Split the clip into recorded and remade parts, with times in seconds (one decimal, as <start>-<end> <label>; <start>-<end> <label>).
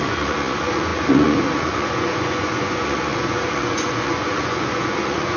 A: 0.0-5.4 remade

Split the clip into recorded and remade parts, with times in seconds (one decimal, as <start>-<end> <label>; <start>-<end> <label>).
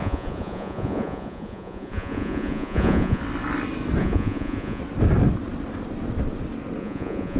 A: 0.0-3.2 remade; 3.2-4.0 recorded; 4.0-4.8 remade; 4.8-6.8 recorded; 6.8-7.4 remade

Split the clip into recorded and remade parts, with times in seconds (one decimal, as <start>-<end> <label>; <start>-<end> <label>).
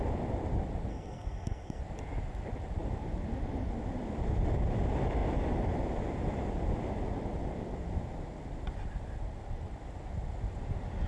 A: 0.0-0.9 recorded; 0.9-1.8 remade; 1.8-11.1 recorded